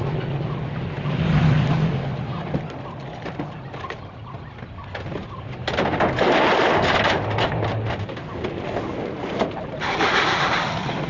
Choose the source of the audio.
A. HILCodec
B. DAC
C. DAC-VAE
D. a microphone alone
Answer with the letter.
D